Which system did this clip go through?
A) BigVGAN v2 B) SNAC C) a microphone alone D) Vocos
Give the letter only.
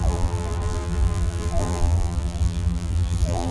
A